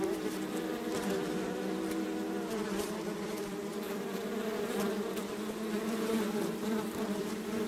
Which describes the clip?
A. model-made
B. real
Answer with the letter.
A